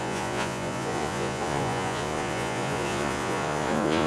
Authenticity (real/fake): fake